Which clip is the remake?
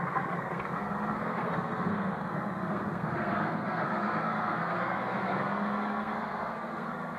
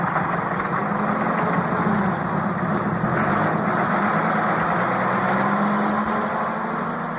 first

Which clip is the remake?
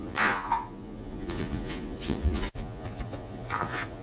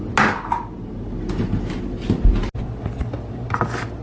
first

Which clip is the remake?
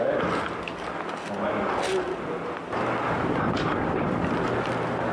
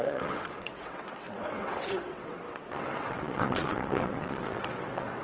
second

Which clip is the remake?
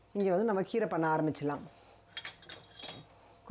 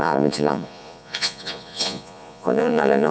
second